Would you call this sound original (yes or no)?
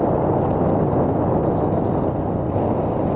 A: yes